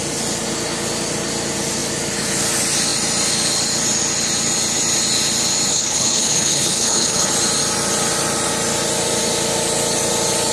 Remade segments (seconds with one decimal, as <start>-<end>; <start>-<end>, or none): 5.7-7.3